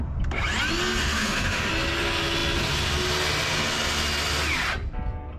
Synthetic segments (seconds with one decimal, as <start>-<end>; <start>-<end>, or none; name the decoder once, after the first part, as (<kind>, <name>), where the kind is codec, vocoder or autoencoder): 1.0-1.7 (autoencoder, DAC-VAE)